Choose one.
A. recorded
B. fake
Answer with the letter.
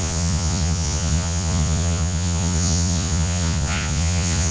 B